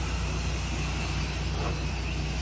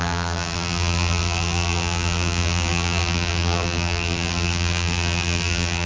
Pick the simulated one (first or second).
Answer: second